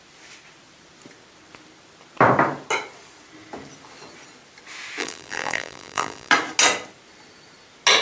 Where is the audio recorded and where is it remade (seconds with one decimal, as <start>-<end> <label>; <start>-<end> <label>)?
0.0-5.0 recorded; 5.0-6.3 remade; 6.3-8.0 recorded